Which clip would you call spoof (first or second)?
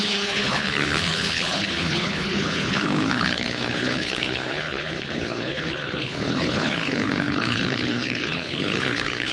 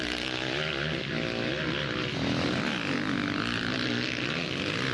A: first